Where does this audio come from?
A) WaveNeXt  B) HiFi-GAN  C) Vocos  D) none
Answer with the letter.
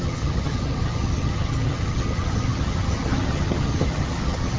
B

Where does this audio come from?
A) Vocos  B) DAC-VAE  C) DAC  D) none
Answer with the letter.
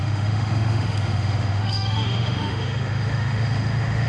B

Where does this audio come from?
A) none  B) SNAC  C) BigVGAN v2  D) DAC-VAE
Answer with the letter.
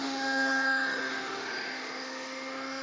D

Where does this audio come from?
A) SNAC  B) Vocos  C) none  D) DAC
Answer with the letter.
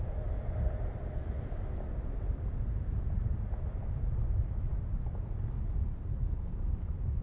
C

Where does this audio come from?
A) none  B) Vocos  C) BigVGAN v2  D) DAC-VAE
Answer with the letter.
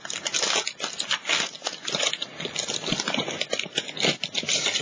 A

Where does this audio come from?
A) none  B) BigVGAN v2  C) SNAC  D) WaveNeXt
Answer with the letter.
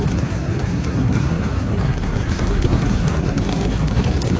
C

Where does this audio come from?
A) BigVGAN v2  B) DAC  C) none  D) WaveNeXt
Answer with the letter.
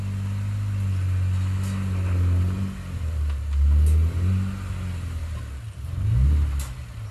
C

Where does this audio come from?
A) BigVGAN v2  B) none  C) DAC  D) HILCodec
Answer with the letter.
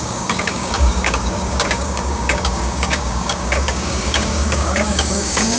C